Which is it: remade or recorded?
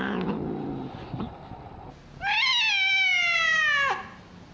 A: recorded